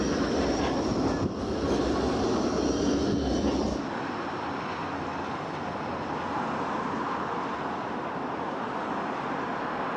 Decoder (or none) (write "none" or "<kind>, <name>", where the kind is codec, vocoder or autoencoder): none